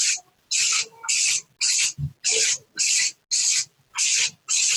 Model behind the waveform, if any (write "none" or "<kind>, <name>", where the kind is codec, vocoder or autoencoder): none